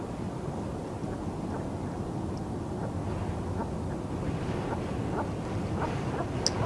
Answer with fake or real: real